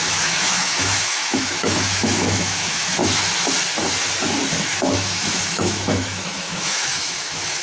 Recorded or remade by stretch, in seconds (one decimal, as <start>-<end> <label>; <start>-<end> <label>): 0.0-3.0 remade; 3.0-4.6 recorded; 4.6-7.6 remade